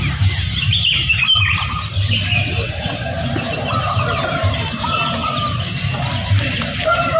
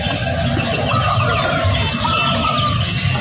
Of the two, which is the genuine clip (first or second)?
second